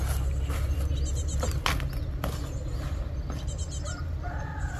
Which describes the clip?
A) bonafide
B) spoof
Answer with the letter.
A